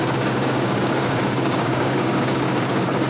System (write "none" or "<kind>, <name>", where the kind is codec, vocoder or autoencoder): codec, DAC